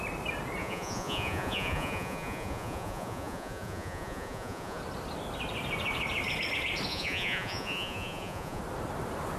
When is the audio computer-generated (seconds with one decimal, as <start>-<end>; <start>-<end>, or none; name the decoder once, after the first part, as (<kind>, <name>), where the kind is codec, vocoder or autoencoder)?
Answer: 0.6-4.8 (vocoder, Vocos); 6.9-8.6